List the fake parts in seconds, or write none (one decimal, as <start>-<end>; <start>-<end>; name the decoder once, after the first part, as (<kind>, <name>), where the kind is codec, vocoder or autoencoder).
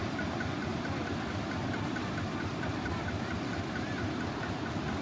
0.7-2.1 (vocoder, BigVGAN v2); 2.5-5.0